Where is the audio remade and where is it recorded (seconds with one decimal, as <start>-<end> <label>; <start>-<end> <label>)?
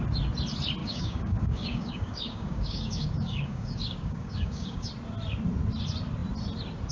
0.0-0.8 recorded; 0.8-4.9 remade; 4.9-6.9 recorded